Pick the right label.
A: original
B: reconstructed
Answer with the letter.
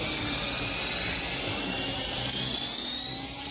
A